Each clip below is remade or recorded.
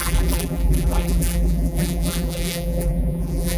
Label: remade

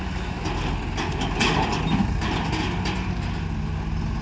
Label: recorded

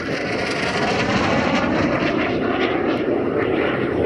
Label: recorded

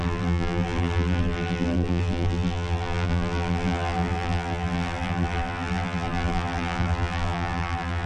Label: remade